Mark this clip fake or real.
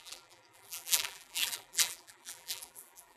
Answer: fake